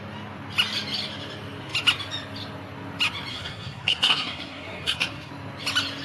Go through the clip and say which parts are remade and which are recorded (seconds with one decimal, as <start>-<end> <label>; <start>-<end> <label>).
0.0-3.3 recorded; 3.3-5.3 remade; 5.3-6.0 recorded